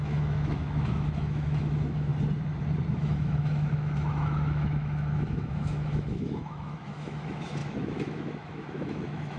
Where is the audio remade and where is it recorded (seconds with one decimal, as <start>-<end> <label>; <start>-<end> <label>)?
0.0-2.1 remade; 2.1-2.9 recorded; 2.9-9.4 remade